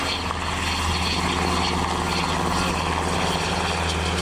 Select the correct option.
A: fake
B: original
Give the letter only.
B